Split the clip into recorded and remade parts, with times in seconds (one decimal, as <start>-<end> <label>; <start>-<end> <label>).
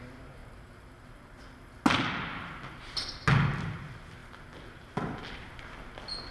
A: 0.0-0.4 recorded; 0.4-1.4 remade; 1.4-6.3 recorded